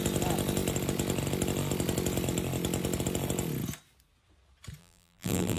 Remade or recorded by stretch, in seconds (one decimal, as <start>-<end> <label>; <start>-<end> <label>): 0.0-4.8 recorded; 4.8-5.6 remade

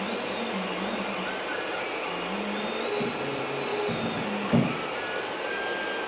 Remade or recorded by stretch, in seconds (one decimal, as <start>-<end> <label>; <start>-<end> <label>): 0.0-6.1 recorded

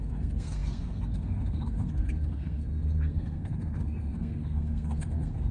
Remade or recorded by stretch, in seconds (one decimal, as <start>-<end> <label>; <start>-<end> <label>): 0.0-5.5 remade

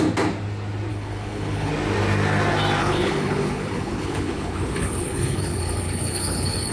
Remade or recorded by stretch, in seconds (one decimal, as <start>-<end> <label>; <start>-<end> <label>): 0.0-0.9 recorded; 0.9-1.7 remade; 1.7-2.8 recorded; 2.8-6.7 remade

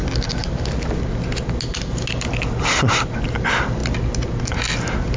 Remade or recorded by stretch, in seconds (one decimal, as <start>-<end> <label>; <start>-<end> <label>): 0.0-5.2 recorded